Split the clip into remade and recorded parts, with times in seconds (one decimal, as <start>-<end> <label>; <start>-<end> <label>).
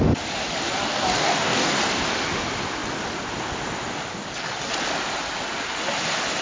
0.0-0.9 recorded; 0.9-1.8 remade; 1.8-6.4 recorded